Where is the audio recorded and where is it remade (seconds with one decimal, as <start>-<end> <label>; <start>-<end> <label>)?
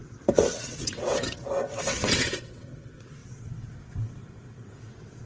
0.0-5.3 remade